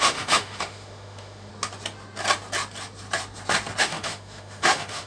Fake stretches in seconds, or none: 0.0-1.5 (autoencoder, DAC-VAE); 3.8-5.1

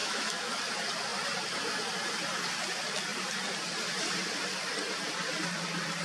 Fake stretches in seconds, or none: 0.0-0.5 (autoencoder, DAC-VAE)

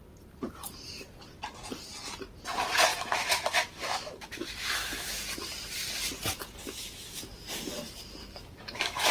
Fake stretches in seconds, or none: 2.9-5.2 (autoencoder, DAC-VAE); 6.6-7.3; 8.2-9.1

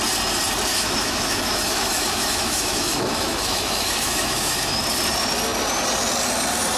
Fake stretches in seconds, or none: 0.7-4.8 (autoencoder, DAC-VAE)

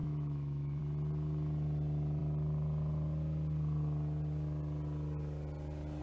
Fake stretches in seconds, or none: 0.0-0.8 (autoencoder, DAC-VAE)